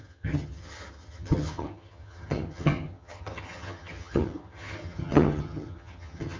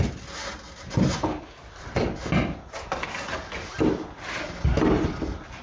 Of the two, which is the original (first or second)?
second